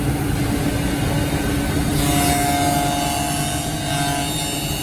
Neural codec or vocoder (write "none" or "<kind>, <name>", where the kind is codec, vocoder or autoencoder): none